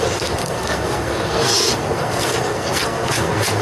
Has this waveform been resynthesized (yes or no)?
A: yes